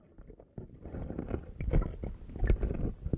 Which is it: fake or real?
real